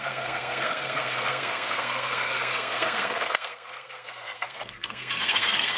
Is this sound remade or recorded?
remade